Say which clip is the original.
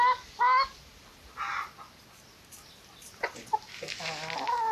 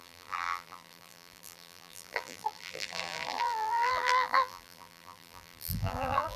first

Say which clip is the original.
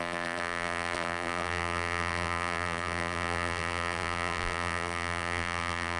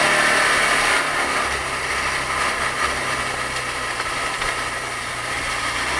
second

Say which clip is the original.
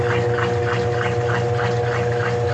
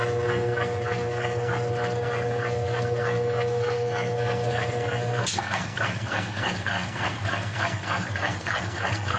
first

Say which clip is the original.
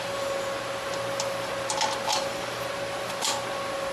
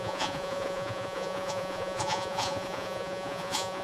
first